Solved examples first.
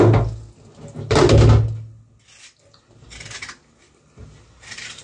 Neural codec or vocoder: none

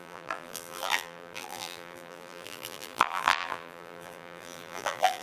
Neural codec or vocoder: vocoder, BigVGAN v2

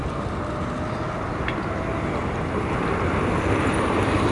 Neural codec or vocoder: none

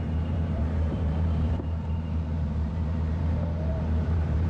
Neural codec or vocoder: vocoder, BigVGAN v2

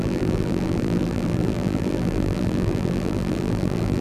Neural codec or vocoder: vocoder, BigVGAN v2